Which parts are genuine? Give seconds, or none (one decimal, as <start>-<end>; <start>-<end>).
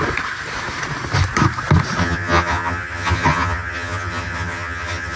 0.0-2.0